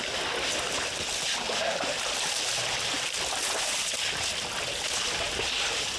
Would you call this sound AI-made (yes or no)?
no